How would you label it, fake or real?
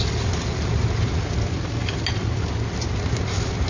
real